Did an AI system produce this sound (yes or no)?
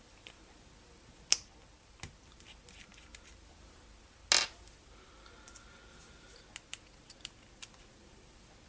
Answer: no